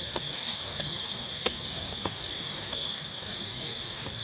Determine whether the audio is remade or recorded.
remade